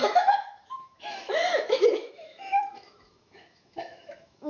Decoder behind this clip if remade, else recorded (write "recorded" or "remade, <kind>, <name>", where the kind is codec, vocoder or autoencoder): remade, autoencoder, DAC-VAE